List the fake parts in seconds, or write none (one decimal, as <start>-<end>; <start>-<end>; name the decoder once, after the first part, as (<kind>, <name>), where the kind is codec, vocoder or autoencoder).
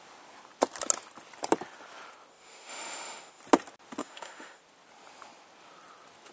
2.3-3.4 (autoencoder, DAC-VAE); 4.0-4.6